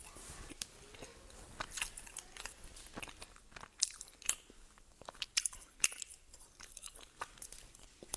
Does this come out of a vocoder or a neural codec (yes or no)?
no